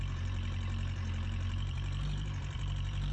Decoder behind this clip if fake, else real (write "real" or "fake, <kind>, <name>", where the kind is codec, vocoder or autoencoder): fake, vocoder, BigVGAN v2